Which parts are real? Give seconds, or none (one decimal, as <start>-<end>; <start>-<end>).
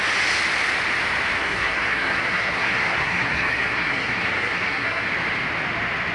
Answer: 0.0-1.4; 5.1-6.1